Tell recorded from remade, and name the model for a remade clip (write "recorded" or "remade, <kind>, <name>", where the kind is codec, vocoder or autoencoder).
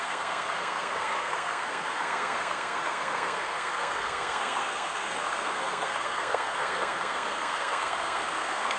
remade, codec, SNAC